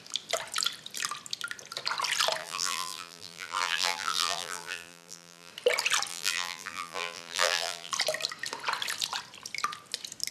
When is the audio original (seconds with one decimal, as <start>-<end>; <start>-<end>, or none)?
0.0-2.4; 5.5-6.1; 7.9-10.3